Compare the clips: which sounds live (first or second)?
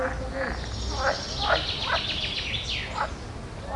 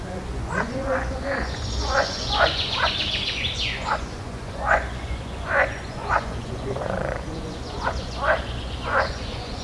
first